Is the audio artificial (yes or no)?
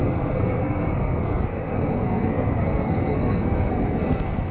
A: yes